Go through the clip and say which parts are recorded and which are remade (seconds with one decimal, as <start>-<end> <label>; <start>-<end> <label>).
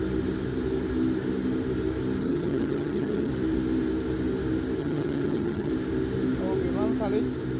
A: 0.0-2.2 recorded; 2.2-3.3 remade; 3.3-4.8 recorded; 4.8-5.7 remade; 5.7-7.6 recorded